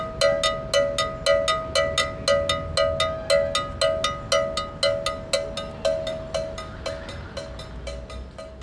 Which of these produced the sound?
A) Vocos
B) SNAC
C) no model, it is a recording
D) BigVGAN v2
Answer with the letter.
C